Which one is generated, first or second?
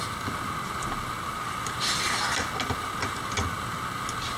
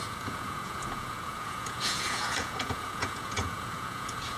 second